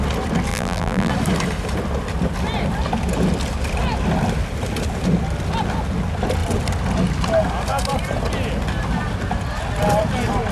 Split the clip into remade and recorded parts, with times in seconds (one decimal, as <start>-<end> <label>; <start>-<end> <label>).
0.0-0.5 recorded; 0.5-1.1 remade; 1.1-10.5 recorded

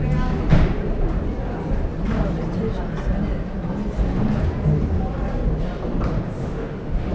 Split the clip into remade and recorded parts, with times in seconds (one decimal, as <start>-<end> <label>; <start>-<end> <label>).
0.0-6.4 recorded; 6.4-7.1 remade